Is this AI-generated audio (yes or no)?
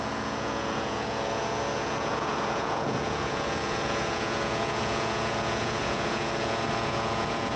yes